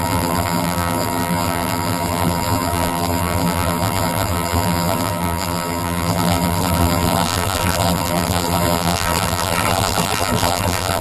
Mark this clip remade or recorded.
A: remade